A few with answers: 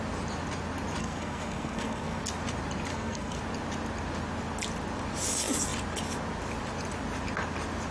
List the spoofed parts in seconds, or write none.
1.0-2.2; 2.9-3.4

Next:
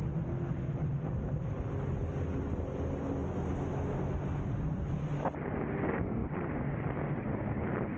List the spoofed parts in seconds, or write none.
none